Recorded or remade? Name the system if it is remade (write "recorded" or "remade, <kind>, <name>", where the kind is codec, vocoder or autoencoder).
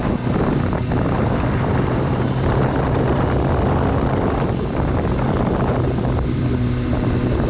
recorded